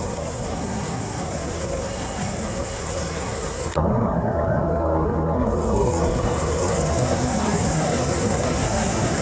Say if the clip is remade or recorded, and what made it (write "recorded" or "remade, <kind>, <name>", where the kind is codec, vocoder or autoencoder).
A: remade, codec, SNAC